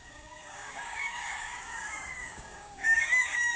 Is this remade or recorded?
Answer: remade